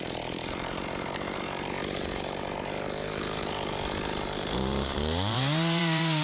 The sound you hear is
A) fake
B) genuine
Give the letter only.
A